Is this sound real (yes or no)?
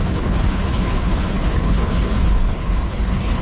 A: no